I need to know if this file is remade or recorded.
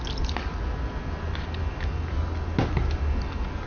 recorded